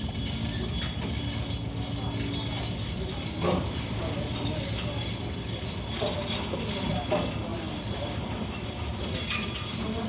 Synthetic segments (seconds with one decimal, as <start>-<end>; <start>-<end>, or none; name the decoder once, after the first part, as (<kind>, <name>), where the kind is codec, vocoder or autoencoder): none